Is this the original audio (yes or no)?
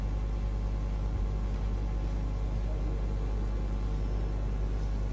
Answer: yes